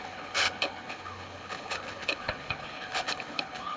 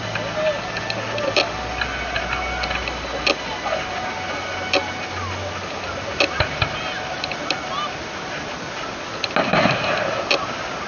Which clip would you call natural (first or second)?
second